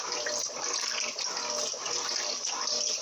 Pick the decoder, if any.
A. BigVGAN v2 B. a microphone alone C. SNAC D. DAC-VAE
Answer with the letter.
B